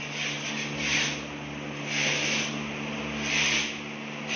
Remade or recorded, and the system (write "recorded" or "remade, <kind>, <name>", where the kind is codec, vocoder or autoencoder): recorded